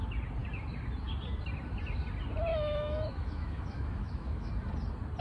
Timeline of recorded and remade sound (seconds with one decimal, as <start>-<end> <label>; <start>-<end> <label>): 0.0-2.5 recorded; 2.5-4.5 remade; 4.5-5.2 recorded